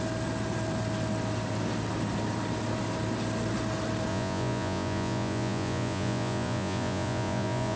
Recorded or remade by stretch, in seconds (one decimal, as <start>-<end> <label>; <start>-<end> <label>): 0.0-4.1 recorded; 4.1-7.8 remade